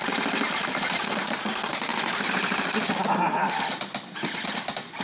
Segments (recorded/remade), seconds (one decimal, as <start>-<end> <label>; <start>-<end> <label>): 0.0-5.0 recorded